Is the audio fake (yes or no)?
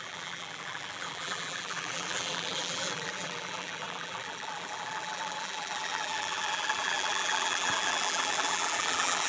yes